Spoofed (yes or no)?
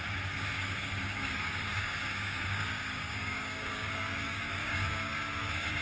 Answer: yes